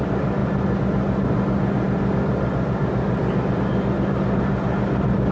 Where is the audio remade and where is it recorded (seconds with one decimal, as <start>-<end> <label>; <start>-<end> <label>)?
0.0-5.3 recorded